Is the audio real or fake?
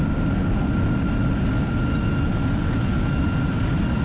real